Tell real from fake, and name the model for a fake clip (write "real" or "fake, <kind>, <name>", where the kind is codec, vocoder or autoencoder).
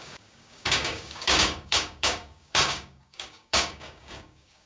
fake, codec, DAC